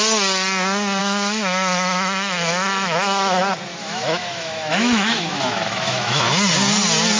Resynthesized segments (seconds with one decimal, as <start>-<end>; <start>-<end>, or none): 1.0-3.4; 3.8-6.2